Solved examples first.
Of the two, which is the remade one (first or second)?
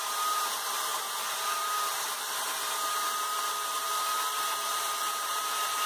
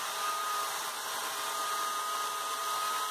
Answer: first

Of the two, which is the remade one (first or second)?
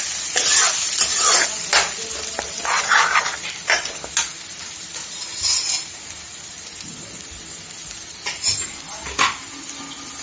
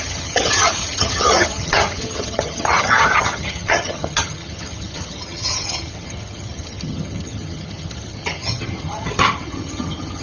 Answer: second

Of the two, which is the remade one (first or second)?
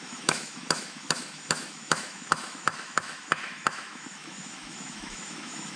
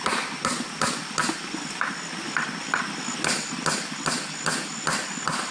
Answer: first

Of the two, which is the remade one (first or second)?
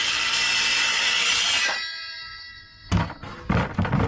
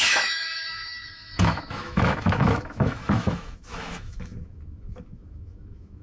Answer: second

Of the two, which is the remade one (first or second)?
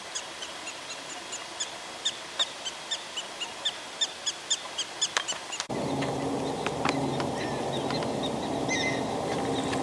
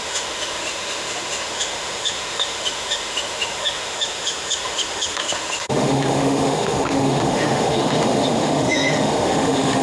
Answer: second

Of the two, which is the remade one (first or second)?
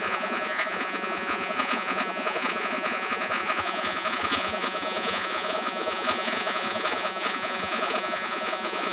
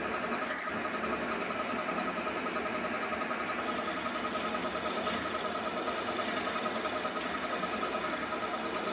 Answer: first